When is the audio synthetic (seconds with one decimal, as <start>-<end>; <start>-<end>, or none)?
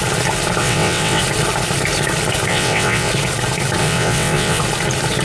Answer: 0.6-1.2; 2.5-3.1; 3.8-4.6